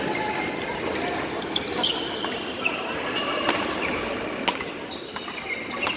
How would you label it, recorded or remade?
recorded